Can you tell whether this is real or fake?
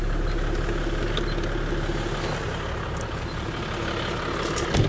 real